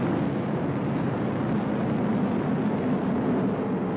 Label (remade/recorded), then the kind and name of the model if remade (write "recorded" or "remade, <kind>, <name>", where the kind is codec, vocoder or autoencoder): recorded